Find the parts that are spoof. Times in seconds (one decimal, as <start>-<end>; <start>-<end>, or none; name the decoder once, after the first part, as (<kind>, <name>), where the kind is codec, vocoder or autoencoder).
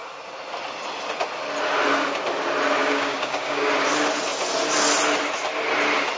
2.8-3.7 (codec, DAC)